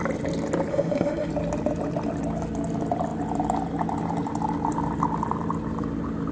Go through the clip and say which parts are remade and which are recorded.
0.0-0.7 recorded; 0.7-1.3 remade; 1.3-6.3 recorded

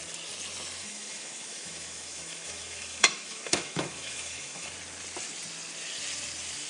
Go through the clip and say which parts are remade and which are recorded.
0.0-0.8 recorded; 0.8-4.7 remade; 4.7-6.7 recorded

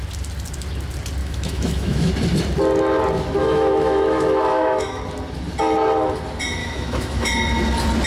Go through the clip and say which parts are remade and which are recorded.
0.0-1.2 recorded; 1.2-2.1 remade; 2.1-3.4 recorded; 3.4-5.0 remade; 5.0-6.6 recorded; 6.6-7.3 remade; 7.3-8.1 recorded

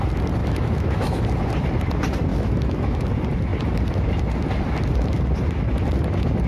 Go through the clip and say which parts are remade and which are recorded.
0.0-0.4 recorded; 0.4-1.2 remade; 1.2-2.3 recorded; 2.3-3.0 remade; 3.0-6.5 recorded

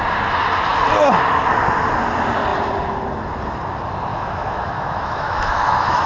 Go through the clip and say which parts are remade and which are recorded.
0.0-4.1 recorded; 4.1-6.1 remade